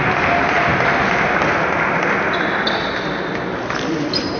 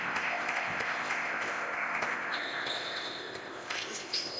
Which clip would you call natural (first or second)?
first